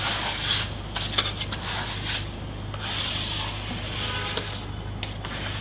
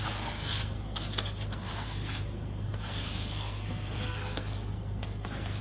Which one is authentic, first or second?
first